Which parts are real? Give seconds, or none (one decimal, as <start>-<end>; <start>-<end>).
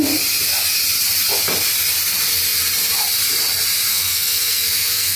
0.0-3.9